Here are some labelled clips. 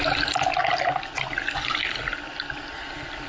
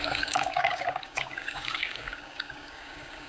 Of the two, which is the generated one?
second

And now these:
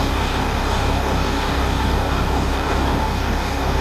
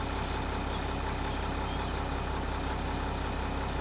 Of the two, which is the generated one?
first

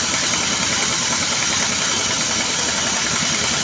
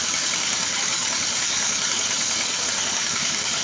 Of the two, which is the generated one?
second